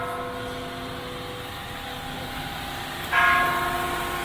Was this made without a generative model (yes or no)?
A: yes